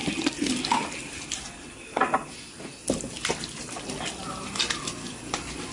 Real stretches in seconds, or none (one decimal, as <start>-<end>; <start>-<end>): 0.0-5.7